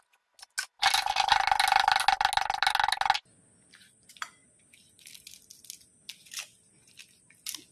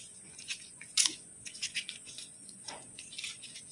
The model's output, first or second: second